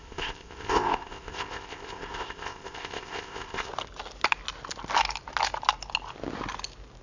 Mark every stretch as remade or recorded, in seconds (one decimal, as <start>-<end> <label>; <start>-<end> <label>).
0.0-3.7 remade; 3.7-7.0 recorded